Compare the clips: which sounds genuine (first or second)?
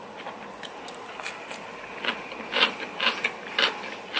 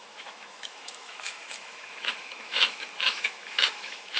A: first